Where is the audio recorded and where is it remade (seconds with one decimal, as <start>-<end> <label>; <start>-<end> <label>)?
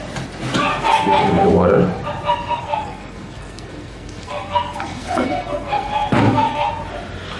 0.0-0.7 recorded; 0.7-1.5 remade; 1.5-2.3 recorded; 2.3-6.7 remade; 6.7-7.4 recorded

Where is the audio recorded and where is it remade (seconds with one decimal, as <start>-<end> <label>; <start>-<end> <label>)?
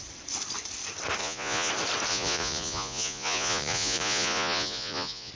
0.0-1.2 recorded; 1.2-1.7 remade; 1.7-2.1 recorded; 2.1-5.3 remade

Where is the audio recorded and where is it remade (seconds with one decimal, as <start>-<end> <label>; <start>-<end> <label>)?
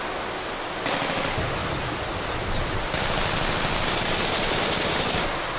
0.0-5.6 recorded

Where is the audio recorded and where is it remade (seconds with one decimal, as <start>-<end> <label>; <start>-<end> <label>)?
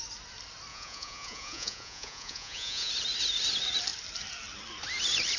0.0-0.7 recorded; 0.7-2.9 remade; 2.9-5.4 recorded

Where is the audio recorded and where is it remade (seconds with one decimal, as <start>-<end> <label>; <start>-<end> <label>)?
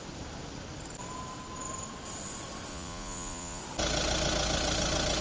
0.0-2.7 recorded; 2.7-3.6 remade; 3.6-5.2 recorded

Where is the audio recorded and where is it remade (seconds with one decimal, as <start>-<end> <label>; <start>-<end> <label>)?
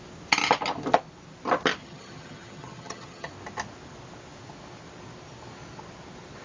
0.0-1.8 recorded; 1.8-3.3 remade; 3.3-6.4 recorded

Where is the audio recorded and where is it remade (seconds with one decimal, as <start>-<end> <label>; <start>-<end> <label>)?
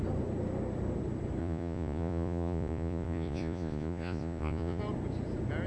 0.0-1.4 recorded; 1.4-4.8 remade; 4.8-5.7 recorded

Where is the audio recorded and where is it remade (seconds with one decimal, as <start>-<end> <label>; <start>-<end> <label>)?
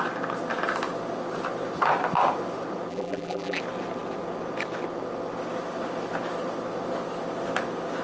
0.0-2.9 recorded; 2.9-3.6 remade; 3.6-8.0 recorded